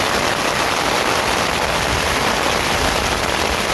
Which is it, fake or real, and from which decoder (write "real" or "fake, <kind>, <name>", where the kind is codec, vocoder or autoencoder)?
real